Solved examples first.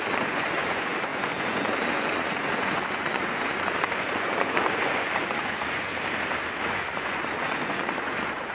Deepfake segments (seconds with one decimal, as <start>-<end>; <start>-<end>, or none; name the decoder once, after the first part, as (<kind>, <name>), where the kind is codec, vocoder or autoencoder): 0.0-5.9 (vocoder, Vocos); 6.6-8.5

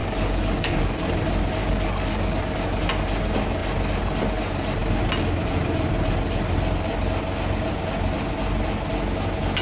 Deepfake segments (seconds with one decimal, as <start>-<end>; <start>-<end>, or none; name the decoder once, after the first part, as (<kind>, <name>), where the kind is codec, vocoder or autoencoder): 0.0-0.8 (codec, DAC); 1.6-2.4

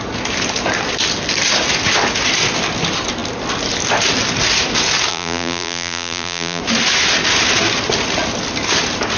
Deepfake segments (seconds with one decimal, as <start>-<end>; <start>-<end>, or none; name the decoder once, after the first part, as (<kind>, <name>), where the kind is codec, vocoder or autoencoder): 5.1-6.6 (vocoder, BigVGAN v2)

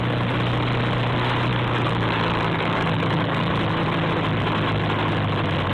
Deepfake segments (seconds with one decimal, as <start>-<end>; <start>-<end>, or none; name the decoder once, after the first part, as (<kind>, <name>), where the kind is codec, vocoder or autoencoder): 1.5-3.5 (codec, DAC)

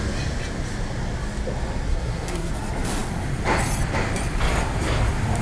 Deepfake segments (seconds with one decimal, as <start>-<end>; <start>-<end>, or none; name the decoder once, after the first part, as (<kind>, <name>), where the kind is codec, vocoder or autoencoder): 1.9-2.5 (codec, SNAC)

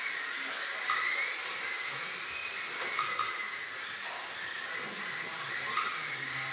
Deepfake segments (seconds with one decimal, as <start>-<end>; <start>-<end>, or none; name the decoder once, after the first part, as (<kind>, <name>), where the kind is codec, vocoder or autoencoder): none

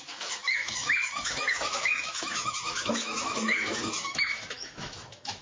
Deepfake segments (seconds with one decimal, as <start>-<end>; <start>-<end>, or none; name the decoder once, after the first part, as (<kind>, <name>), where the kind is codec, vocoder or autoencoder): 0.0-5.4 (autoencoder, DAC-VAE)